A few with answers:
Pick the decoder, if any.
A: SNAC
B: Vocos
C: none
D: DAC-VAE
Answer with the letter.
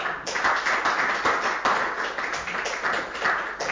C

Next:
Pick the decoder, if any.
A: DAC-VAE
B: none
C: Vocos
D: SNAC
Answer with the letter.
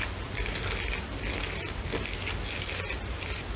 B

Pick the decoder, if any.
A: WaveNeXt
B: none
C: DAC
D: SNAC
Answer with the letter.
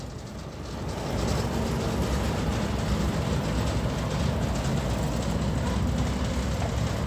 B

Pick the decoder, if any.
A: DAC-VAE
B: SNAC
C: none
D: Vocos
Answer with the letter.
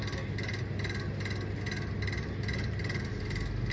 C